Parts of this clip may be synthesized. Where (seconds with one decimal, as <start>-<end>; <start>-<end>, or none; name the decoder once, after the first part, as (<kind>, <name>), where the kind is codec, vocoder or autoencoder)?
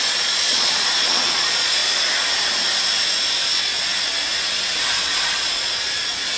0.0-1.8 (vocoder, Vocos); 5.0-6.4